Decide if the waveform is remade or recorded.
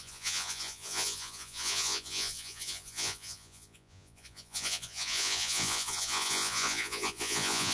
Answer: remade